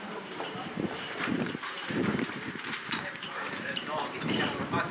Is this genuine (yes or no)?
no